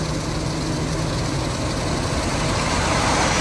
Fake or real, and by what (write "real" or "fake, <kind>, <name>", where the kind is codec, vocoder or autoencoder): real